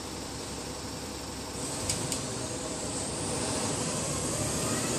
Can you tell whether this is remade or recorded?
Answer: remade